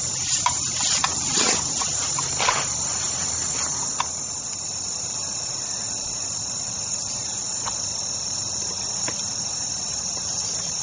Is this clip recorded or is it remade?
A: recorded